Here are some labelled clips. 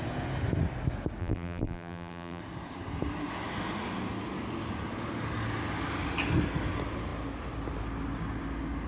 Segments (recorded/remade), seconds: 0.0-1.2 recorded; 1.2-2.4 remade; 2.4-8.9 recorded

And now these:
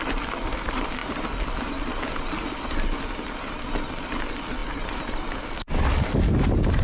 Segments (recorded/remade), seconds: 0.0-6.8 recorded